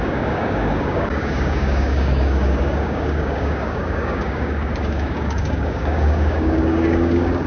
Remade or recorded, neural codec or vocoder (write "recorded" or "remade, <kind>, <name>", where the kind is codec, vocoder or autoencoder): remade, codec, DAC